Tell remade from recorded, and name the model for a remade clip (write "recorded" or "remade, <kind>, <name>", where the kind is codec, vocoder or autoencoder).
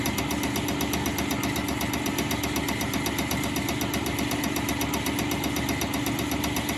recorded